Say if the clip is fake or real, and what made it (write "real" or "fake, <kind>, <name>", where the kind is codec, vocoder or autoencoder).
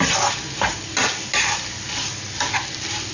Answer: real